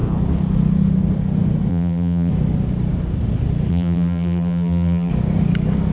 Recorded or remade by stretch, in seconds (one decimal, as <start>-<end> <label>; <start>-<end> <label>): 0.0-1.7 recorded; 1.7-2.3 remade; 2.3-3.7 recorded; 3.7-5.1 remade; 5.1-5.9 recorded